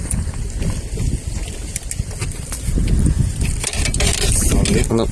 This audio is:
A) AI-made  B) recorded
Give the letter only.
B